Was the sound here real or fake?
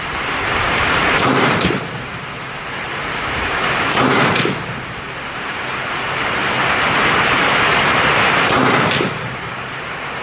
fake